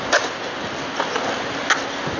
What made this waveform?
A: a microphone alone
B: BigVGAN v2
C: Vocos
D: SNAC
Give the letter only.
A